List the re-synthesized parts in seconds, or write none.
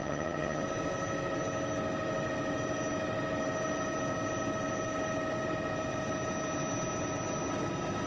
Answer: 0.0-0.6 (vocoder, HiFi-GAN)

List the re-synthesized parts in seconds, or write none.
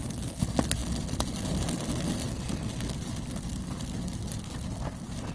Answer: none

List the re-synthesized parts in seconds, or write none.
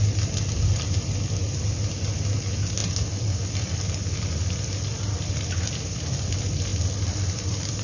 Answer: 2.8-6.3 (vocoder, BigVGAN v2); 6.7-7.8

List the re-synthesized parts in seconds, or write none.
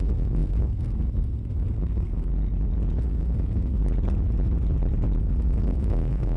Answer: 0.0-2.3 (codec, SNAC); 3.0-3.8; 5.2-6.4